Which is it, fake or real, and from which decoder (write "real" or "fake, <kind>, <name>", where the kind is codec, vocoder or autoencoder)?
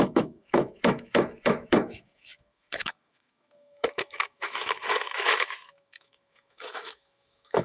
fake, autoencoder, DAC-VAE